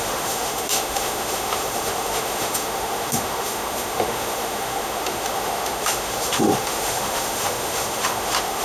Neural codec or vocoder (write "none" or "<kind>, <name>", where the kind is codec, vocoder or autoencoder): autoencoder, DAC-VAE